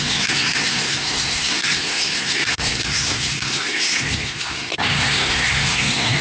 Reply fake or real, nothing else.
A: fake